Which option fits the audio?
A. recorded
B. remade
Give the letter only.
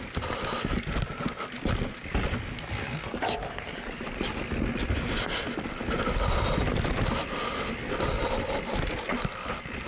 A